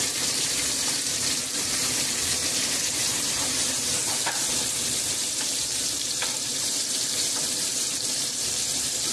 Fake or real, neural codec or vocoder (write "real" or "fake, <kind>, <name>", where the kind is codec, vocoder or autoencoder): fake, vocoder, BigVGAN v2